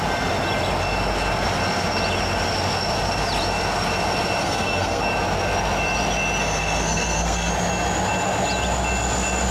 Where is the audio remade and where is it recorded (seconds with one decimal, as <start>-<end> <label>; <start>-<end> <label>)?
0.0-4.4 recorded; 4.4-5.0 remade; 5.0-6.4 recorded; 6.4-7.5 remade; 7.5-9.5 recorded